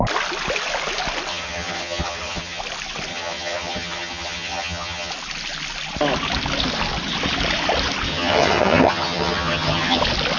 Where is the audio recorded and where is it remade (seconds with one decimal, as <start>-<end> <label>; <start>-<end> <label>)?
0.0-1.3 recorded; 1.3-2.6 remade; 2.6-3.1 recorded; 3.1-5.1 remade; 5.1-8.1 recorded; 8.1-10.0 remade; 10.0-10.4 recorded